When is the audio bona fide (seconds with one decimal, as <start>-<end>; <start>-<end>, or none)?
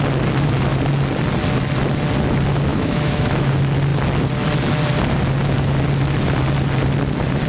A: 0.0-2.7; 3.5-7.5